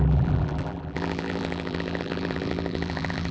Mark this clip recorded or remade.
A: remade